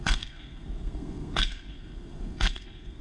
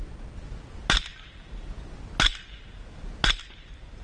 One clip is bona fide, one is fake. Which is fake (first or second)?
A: first